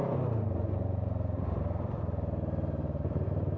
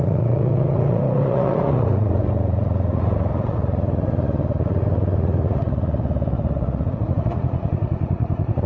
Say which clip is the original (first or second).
first